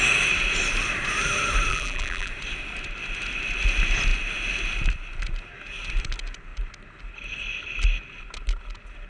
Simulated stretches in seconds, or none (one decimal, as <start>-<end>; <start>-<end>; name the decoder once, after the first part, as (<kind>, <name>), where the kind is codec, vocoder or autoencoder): 1.7-2.3 (vocoder, BigVGAN v2)